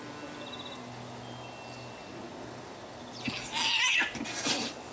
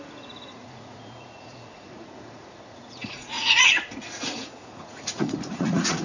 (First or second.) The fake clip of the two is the second